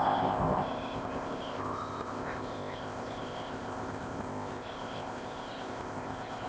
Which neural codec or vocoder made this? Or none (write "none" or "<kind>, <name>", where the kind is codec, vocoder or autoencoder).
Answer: codec, ZipCodec